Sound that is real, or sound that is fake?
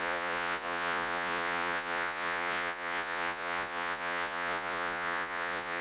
fake